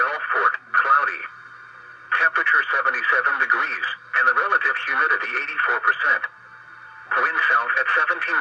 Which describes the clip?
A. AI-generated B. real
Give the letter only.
B